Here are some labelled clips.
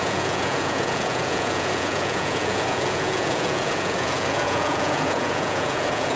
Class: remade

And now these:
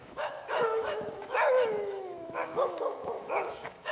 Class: remade